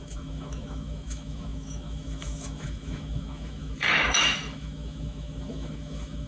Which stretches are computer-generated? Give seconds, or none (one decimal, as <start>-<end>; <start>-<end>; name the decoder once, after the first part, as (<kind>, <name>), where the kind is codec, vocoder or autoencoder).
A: 0.0-6.3 (autoencoder, DAC-VAE)